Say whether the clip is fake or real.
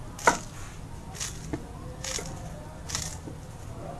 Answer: real